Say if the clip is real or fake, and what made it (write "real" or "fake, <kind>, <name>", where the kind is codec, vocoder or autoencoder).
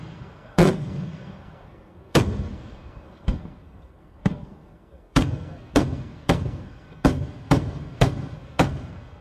fake, codec, SNAC